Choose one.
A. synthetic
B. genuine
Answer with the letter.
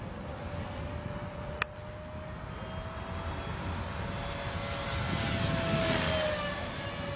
B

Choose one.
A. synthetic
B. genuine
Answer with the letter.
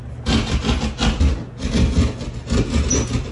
B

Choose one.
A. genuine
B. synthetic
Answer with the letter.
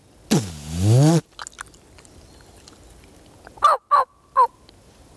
A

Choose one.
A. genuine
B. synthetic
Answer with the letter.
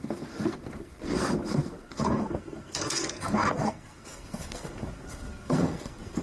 B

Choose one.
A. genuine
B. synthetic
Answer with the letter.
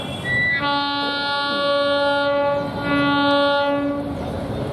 A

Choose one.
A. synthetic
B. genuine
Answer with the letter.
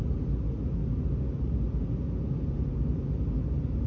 B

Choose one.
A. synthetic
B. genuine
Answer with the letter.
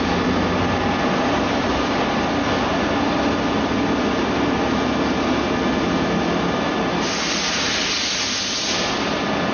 B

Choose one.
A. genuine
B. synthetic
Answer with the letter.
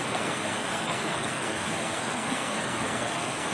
B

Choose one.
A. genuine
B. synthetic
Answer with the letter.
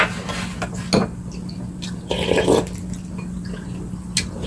A